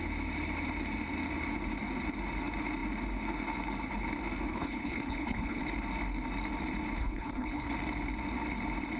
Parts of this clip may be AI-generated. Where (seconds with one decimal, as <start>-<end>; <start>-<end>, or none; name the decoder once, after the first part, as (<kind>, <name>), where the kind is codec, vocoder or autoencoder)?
4.5-5.6 (codec, HILCodec); 7.0-7.7

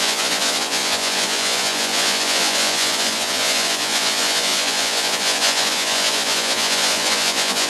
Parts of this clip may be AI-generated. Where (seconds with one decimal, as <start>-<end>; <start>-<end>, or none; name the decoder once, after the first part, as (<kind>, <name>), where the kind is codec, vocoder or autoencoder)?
0.0-7.7 (vocoder, Vocos)

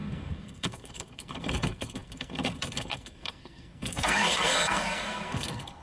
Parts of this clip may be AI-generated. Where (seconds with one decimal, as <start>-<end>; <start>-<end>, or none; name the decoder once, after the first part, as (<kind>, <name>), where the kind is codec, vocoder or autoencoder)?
0.0-5.8 (codec, SNAC)

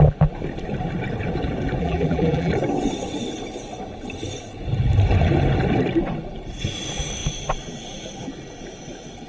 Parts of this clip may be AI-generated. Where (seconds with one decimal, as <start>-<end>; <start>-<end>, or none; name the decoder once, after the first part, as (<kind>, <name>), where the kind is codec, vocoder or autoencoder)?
1.8-2.5 (vocoder, BigVGAN v2)

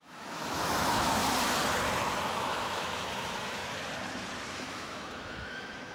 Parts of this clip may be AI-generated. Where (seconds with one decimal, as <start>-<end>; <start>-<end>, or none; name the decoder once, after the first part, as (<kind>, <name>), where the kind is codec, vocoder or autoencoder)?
0.0-1.2 (autoencoder, DAC-VAE); 2.3-3.6; 4.5-5.9

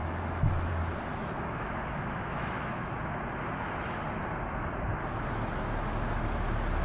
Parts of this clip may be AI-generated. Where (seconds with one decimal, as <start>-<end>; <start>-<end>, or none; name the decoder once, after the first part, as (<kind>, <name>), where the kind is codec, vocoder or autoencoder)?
0.0-0.7 (autoencoder, DAC-VAE); 1.1-2.9

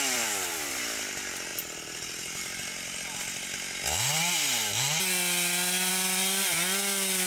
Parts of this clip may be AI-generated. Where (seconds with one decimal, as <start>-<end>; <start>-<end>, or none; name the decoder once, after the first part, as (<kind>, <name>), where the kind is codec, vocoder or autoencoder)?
0.0-1.5 (vocoder, BigVGAN v2); 5.9-7.3

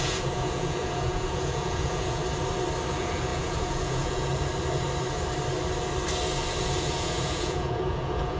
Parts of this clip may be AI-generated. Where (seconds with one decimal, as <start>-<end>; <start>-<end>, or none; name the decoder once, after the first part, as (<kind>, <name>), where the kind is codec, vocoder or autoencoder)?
0.0-2.2 (vocoder, Vocos); 2.9-4.5; 6.6-8.4